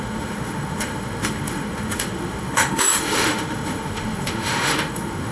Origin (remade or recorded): remade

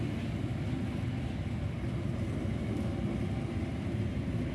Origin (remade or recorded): recorded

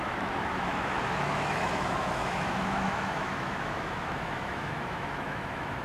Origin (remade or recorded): remade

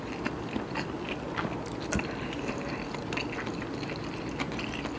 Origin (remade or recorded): recorded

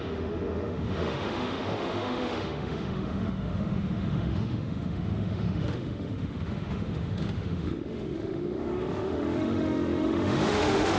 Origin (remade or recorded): remade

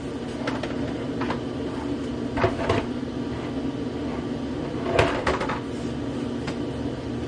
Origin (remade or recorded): recorded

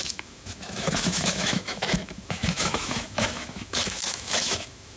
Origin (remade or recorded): remade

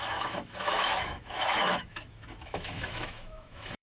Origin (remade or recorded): remade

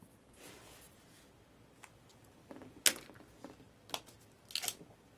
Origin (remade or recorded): recorded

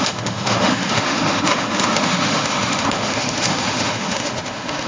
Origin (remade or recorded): remade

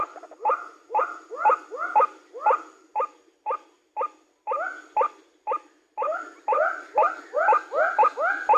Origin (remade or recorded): recorded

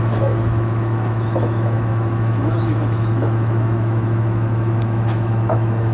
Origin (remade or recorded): remade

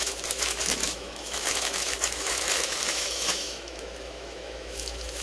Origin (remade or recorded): remade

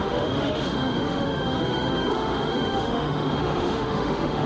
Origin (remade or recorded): remade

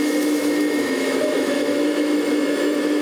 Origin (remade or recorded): remade